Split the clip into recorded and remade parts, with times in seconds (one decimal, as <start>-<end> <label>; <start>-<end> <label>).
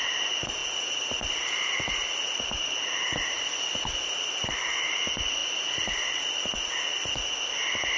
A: 0.0-8.0 recorded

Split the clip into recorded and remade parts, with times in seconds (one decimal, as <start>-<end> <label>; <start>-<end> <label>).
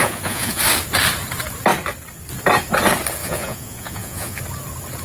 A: 0.0-0.6 remade; 0.6-3.2 recorded; 3.2-4.4 remade; 4.4-5.0 recorded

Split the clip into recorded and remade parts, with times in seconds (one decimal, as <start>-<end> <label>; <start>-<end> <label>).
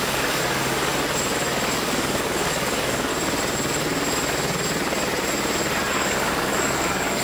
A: 0.0-0.9 remade; 0.9-1.8 recorded; 1.8-3.1 remade; 3.1-5.9 recorded; 5.9-7.2 remade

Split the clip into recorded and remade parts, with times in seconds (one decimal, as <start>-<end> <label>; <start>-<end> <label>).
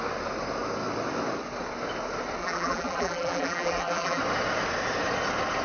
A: 0.0-2.4 recorded; 2.4-4.2 remade; 4.2-5.6 recorded